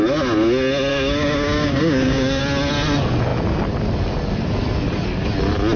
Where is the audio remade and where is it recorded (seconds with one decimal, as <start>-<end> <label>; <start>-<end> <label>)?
0.0-0.9 recorded; 0.9-2.4 remade; 2.4-5.8 recorded